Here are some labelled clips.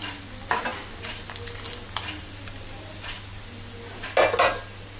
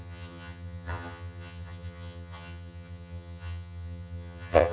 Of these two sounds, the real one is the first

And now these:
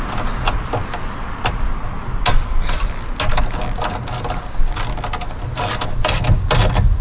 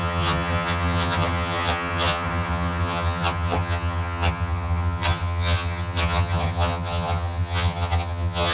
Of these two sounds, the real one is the first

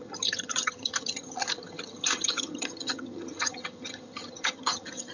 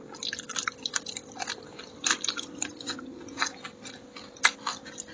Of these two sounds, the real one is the second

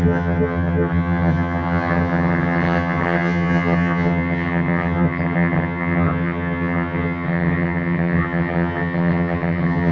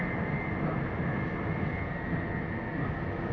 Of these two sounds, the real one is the second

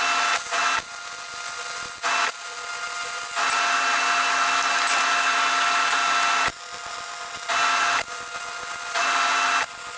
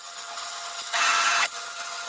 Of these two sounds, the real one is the first